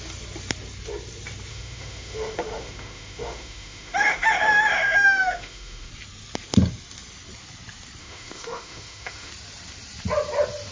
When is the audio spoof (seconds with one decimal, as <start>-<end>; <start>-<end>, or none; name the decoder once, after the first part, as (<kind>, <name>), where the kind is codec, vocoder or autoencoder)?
1.5-5.9 (autoencoder, DAC-VAE); 8.0-9.3